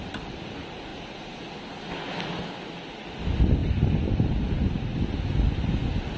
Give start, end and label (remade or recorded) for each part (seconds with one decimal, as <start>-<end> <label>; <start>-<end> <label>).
0.0-6.2 recorded